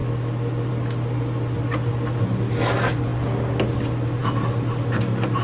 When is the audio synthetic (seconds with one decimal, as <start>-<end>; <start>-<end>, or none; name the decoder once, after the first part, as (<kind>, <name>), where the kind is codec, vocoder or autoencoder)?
none